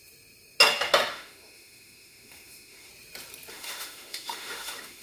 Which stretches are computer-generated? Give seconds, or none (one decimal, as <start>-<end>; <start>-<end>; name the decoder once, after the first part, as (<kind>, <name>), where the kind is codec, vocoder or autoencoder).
1.1-2.9 (autoencoder, DAC-VAE); 3.5-5.0